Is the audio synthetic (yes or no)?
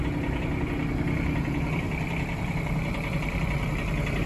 no